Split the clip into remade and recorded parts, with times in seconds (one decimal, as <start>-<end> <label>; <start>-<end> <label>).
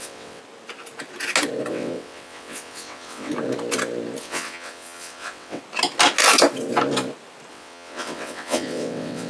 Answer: 0.0-0.4 remade; 0.4-1.7 recorded; 1.7-3.3 remade; 3.3-4.2 recorded; 4.2-5.6 remade; 5.6-7.5 recorded; 7.5-9.3 remade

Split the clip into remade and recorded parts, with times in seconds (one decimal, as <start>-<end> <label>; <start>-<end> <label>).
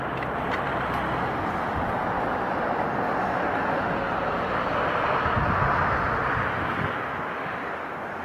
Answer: 0.0-8.2 recorded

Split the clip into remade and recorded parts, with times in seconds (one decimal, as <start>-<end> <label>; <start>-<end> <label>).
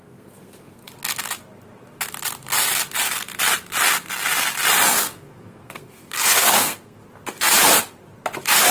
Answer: 0.0-0.8 remade; 0.8-4.9 recorded; 4.9-7.0 remade; 7.0-8.7 recorded